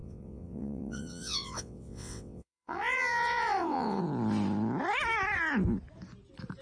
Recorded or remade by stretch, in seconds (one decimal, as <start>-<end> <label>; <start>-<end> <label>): 0.0-4.0 remade; 4.0-6.6 recorded